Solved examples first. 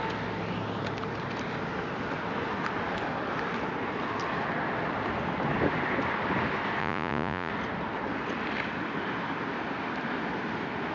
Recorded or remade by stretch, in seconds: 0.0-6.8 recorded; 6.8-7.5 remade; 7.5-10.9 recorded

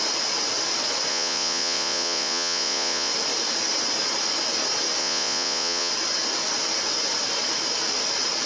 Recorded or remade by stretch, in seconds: 0.0-1.1 recorded; 1.1-3.1 remade; 3.1-5.0 recorded; 5.0-5.9 remade; 5.9-8.5 recorded

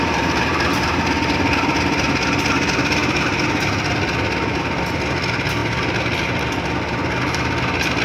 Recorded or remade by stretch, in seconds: 0.0-8.0 recorded

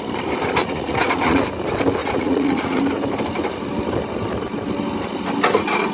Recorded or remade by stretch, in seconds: 0.0-0.6 recorded; 0.6-1.4 remade; 1.4-2.0 recorded; 2.0-2.8 remade; 2.8-5.9 recorded

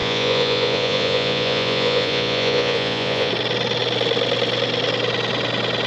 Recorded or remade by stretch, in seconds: 0.0-3.3 remade; 3.3-5.9 recorded

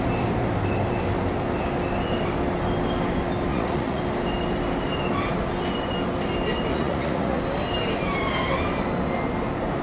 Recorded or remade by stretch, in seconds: 0.0-3.5 recorded; 3.5-4.0 remade; 4.0-6.7 recorded; 6.7-7.4 remade; 7.4-9.8 recorded

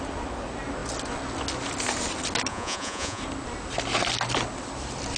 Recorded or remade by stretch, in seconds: 0.0-2.5 recorded; 2.5-3.2 remade; 3.2-5.2 recorded